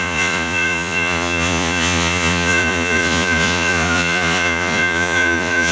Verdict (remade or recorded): remade